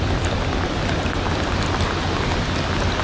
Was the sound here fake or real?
real